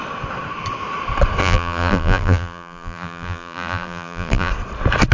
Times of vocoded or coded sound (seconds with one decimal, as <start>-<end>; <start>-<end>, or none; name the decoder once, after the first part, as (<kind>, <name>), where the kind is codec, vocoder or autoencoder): 1.4-4.5 (vocoder, BigVGAN v2)